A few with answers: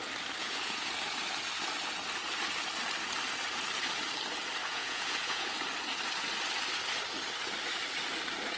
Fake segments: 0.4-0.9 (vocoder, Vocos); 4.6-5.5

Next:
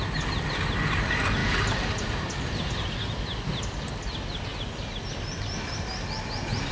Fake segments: none

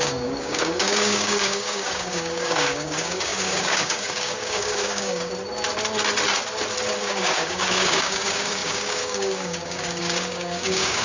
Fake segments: 0.0-5.3 (codec, DAC); 7.0-11.0

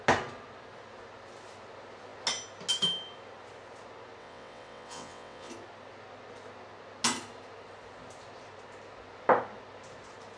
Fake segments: 4.2-5.5 (vocoder, WaveNeXt)